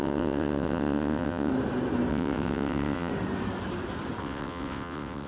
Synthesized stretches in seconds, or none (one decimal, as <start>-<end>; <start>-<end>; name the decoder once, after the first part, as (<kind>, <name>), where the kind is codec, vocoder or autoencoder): 0.0-1.5 (vocoder, WaveNeXt); 2.1-3.1; 4.2-5.3